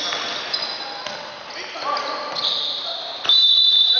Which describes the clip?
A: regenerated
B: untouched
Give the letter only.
B